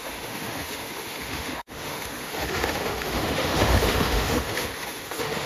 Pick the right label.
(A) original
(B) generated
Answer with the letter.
B